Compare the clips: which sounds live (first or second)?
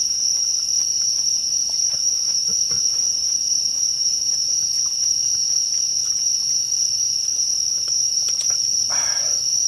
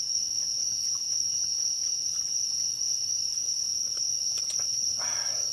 second